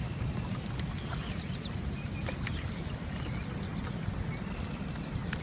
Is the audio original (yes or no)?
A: yes